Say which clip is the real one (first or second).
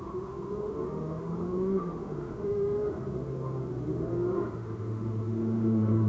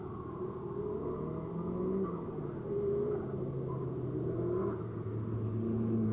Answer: second